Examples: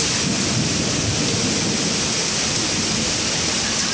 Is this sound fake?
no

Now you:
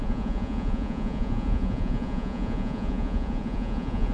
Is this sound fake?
yes